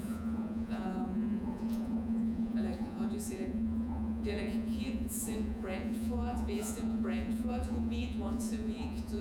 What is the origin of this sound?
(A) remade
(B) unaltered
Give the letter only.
A